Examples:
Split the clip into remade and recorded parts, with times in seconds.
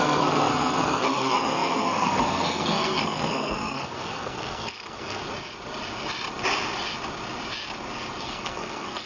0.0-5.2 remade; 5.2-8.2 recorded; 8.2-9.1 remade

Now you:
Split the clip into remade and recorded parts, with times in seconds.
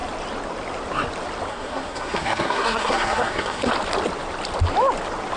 0.0-1.5 recorded; 1.5-3.7 remade; 3.7-5.4 recorded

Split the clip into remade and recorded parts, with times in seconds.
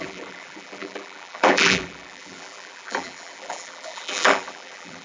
0.0-5.0 remade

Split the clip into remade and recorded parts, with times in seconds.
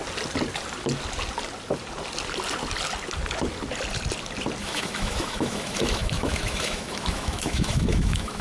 0.0-4.6 recorded; 4.6-8.4 remade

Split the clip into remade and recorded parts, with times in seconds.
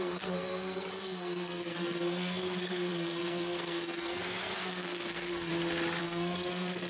0.0-5.5 remade; 5.5-6.0 recorded; 6.0-6.9 remade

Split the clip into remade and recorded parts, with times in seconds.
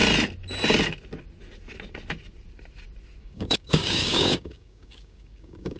0.0-3.2 recorded; 3.2-5.8 remade